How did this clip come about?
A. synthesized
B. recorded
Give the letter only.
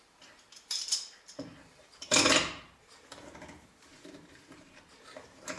A